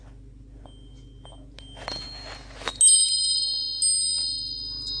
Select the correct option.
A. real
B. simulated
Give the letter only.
A